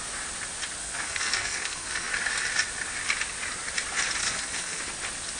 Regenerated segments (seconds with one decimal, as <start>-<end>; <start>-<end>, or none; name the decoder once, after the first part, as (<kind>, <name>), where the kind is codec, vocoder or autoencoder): 0.8-2.1 (codec, SNAC); 4.2-4.8